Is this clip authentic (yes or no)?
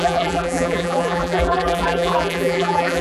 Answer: no